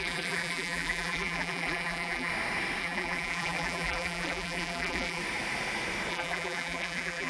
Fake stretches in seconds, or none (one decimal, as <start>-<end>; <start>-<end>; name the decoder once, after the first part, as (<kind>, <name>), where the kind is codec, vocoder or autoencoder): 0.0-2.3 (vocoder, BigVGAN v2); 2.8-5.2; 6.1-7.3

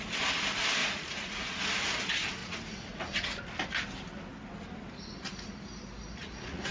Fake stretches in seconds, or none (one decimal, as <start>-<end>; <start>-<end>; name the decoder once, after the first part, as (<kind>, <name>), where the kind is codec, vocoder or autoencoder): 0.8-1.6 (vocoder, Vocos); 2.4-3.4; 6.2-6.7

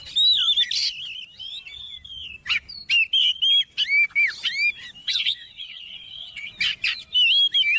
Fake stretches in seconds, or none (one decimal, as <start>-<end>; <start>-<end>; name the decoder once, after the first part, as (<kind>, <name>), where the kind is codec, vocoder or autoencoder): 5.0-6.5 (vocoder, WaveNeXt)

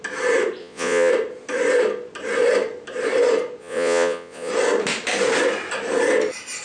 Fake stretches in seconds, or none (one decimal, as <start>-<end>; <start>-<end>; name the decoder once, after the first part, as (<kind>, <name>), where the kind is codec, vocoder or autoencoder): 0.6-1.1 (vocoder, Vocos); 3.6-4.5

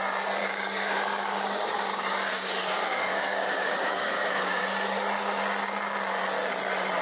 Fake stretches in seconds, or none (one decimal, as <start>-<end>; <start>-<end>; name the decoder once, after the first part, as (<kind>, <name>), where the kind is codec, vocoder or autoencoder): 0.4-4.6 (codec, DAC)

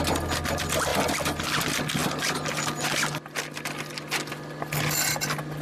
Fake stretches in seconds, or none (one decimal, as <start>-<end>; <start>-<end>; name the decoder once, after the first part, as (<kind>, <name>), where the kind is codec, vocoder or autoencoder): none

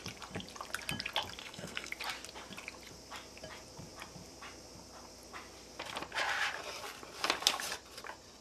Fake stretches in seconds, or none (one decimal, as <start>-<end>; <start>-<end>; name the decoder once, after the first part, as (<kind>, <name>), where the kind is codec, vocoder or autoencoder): 1.4-1.9 (codec, SNAC)